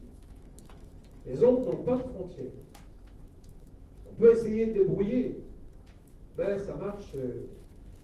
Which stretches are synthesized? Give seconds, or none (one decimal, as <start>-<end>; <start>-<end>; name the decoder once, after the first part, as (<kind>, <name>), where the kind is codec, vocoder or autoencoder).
0.0-8.0 (autoencoder, DAC-VAE)

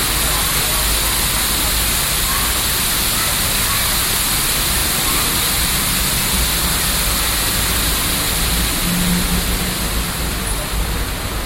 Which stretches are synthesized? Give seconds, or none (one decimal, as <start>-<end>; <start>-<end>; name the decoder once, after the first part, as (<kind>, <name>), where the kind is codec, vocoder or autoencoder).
none

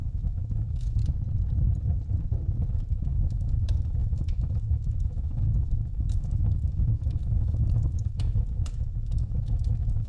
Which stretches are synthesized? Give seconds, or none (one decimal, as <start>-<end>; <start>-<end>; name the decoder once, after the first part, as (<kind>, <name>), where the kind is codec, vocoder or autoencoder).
0.0-1.0 (autoencoder, DAC-VAE); 2.7-10.1